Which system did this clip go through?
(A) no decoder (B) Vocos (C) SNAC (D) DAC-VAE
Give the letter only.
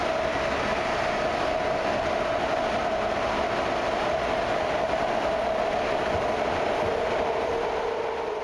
A